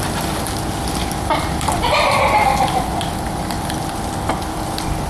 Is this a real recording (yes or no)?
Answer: yes